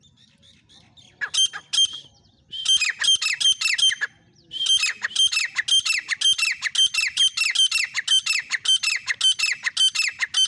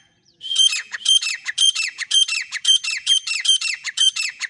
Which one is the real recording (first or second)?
first